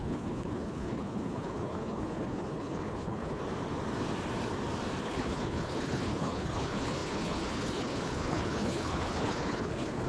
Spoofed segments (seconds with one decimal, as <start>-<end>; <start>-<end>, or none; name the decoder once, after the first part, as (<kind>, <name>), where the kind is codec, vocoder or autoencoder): 0.0-3.4 (codec, HILCodec); 5.0-10.1